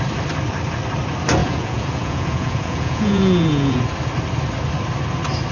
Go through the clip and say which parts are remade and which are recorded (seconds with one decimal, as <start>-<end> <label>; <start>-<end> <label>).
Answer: 0.0-1.4 recorded; 1.4-3.8 remade; 3.8-5.5 recorded